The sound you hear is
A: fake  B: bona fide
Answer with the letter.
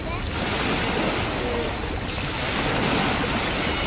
B